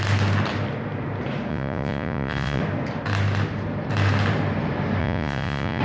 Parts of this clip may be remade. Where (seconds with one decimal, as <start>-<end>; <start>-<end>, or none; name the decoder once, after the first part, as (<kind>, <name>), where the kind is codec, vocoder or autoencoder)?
1.5-2.6 (vocoder, Vocos); 5.0-5.8